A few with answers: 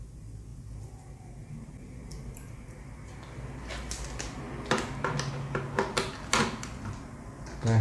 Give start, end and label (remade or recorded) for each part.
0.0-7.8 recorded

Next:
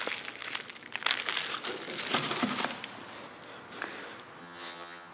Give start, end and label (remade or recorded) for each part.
0.0-4.4 recorded; 4.4-5.1 remade

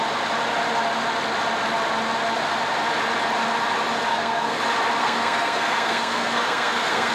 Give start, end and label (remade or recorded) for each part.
0.0-4.1 recorded; 4.1-4.6 remade; 4.6-5.0 recorded; 5.0-7.1 remade

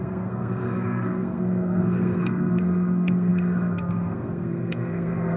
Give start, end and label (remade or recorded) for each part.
0.0-5.4 remade

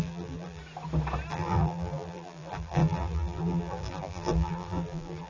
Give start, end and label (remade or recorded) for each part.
0.0-0.6 remade; 0.6-1.3 recorded; 1.3-5.3 remade

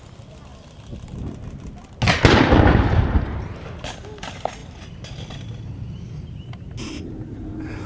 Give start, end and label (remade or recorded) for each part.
0.0-7.9 recorded